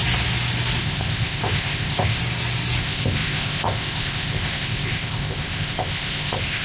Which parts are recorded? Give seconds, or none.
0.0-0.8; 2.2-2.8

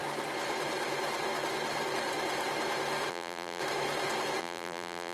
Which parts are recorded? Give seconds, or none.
0.0-3.1; 3.6-4.4

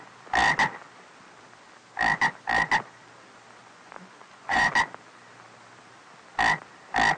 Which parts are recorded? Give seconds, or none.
0.0-3.6; 4.7-7.2

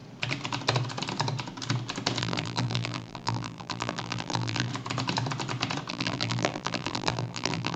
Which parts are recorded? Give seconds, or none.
0.0-2.2; 4.7-5.9